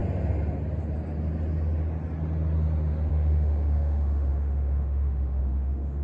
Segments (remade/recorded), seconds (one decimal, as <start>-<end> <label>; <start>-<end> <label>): 0.0-3.1 recorded; 3.1-6.0 remade

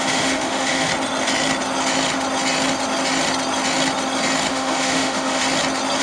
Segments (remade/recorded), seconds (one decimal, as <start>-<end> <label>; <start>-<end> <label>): 0.0-0.9 remade; 0.9-4.5 recorded; 4.5-5.4 remade; 5.4-6.0 recorded

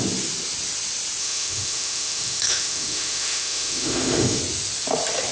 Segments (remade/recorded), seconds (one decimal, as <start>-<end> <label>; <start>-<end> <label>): 0.0-1.2 recorded; 1.2-4.4 remade; 4.4-5.3 recorded

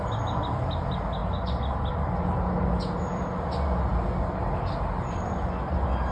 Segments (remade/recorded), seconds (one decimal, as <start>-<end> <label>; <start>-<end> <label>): 0.0-6.1 recorded

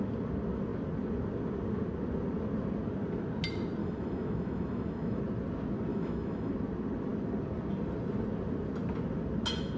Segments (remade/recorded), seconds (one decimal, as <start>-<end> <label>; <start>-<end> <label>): 0.0-3.8 recorded; 3.8-5.2 remade; 5.2-5.9 recorded; 5.9-6.5 remade; 6.5-9.8 recorded